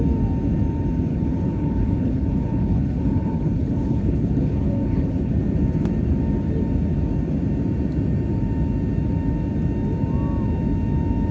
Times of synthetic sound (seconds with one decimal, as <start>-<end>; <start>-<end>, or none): 1.1-5.3